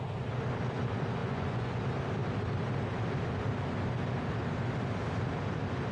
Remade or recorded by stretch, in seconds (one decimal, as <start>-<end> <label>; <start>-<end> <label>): 0.0-1.2 recorded; 1.2-1.8 remade; 1.8-5.9 recorded

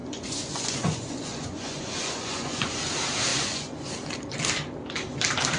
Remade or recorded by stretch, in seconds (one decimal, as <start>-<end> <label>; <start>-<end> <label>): 0.0-2.9 remade; 2.9-3.3 recorded; 3.3-3.9 remade; 3.9-5.6 recorded